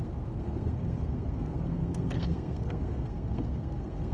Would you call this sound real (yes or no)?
no